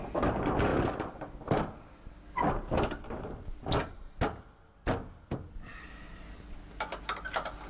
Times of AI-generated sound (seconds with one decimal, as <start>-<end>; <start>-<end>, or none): none